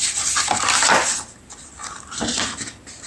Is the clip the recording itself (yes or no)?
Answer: yes